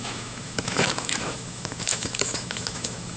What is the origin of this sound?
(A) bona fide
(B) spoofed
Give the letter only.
B